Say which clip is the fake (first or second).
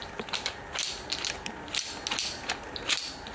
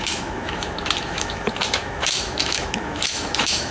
second